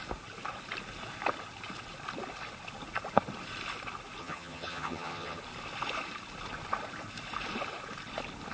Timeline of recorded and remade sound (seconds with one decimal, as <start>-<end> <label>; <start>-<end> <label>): 0.0-4.2 recorded; 4.2-5.4 remade; 5.4-8.5 recorded